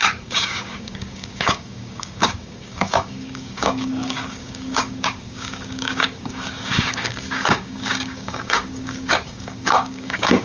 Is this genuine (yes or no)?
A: no